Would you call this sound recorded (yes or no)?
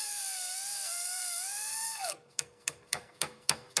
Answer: no